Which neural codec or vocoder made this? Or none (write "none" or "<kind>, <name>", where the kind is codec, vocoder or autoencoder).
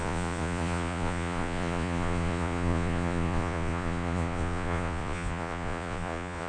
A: vocoder, Vocos